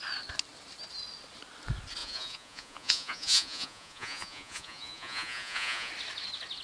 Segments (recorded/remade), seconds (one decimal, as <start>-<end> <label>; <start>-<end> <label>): 0.0-2.0 recorded; 2.0-5.9 remade; 5.9-6.6 recorded